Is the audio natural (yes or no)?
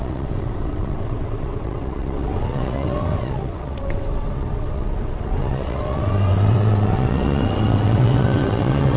no